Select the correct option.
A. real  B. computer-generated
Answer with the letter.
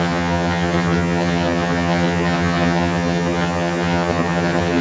B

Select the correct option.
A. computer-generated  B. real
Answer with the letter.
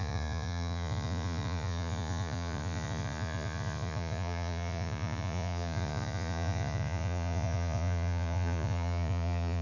A